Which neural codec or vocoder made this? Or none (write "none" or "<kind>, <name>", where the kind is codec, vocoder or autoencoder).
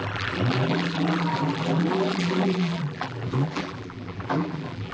vocoder, BigVGAN v2